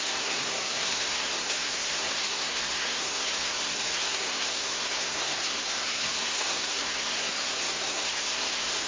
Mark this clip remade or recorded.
remade